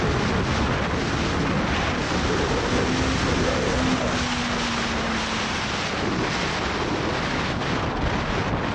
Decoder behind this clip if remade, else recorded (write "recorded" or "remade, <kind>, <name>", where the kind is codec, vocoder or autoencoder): recorded